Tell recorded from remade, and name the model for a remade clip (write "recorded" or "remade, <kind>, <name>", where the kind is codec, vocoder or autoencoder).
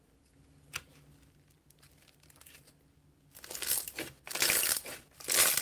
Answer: recorded